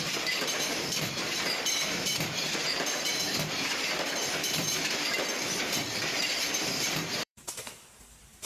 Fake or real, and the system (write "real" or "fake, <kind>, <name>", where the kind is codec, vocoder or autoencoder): fake, vocoder, BigVGAN v2